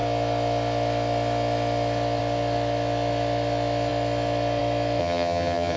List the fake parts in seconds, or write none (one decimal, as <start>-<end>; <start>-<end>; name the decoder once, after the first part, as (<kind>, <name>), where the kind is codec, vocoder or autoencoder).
5.0-5.8 (vocoder, HiFi-GAN)